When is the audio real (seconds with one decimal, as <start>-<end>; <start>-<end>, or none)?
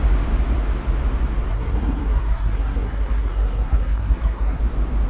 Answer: 0.0-1.5; 4.6-5.1